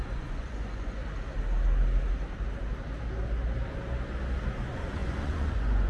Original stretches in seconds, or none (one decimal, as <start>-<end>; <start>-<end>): 1.0-4.5